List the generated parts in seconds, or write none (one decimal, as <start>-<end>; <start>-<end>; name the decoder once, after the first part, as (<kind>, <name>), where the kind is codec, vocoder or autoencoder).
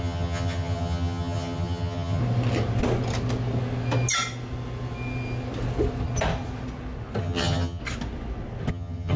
0.0-2.2 (vocoder, HiFi-GAN); 7.2-7.8; 8.7-9.2